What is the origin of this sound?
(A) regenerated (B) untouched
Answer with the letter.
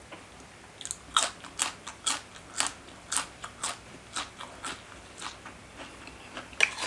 B